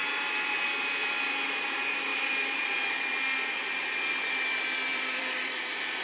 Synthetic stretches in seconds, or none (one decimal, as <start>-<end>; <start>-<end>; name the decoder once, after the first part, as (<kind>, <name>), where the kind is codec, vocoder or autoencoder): 2.1-2.9 (vocoder, BigVGAN v2); 4.9-6.0